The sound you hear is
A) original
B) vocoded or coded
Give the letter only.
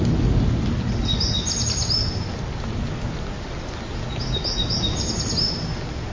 A